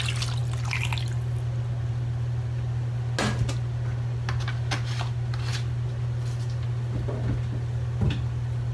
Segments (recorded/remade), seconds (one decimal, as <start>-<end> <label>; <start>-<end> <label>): 0.0-8.7 recorded